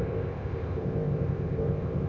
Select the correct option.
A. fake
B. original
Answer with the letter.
A